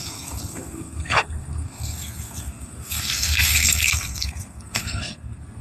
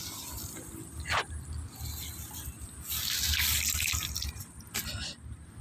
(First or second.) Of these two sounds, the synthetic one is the first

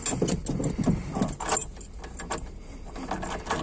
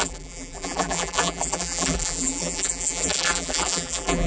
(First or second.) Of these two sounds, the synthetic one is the second